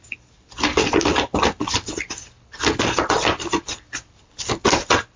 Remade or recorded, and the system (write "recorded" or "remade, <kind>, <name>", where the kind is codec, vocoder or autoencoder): recorded